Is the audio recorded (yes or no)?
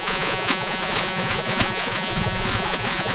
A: no